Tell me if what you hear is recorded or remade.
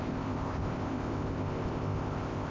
remade